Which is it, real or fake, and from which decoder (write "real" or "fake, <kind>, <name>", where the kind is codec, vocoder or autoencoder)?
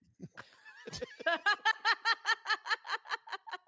real